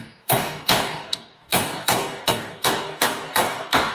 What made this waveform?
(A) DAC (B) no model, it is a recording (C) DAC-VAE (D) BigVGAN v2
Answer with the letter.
A